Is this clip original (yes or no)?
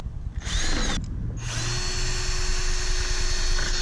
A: yes